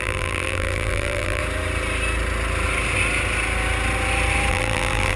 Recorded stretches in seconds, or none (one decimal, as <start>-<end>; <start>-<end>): 1.4-4.5